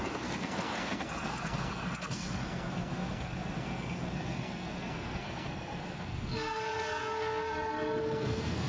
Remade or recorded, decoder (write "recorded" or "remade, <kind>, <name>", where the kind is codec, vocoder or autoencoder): remade, codec, SNAC